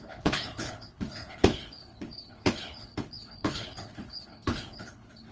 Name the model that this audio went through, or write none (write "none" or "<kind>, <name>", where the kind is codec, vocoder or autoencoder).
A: codec, HILCodec